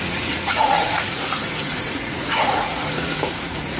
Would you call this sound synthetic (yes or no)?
yes